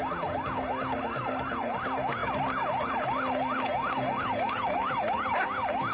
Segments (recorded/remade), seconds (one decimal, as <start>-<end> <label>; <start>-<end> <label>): 0.0-1.2 recorded; 1.2-1.8 remade; 1.8-2.2 recorded; 2.2-5.4 remade; 5.4-5.9 recorded